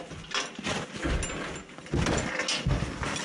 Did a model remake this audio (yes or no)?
no